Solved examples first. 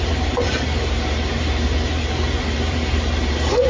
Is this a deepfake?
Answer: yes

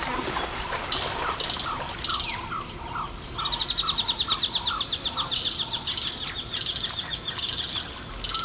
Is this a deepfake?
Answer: no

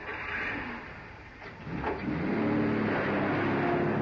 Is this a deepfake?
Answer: no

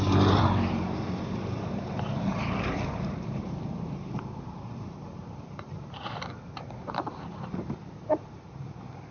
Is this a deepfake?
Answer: yes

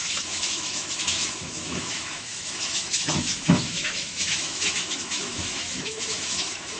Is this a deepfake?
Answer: yes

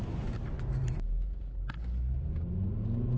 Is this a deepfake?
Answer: no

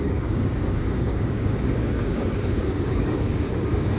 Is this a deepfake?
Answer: yes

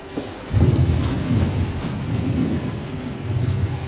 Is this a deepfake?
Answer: yes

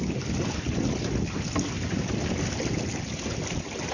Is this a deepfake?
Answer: no